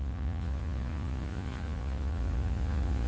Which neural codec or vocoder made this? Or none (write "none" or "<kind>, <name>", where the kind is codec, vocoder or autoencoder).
vocoder, Vocos